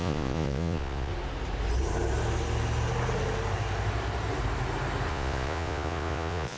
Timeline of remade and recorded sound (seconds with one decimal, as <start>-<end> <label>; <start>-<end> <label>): 0.0-1.1 remade; 1.1-5.1 recorded; 5.1-6.6 remade